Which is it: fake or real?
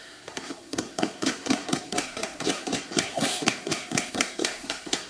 fake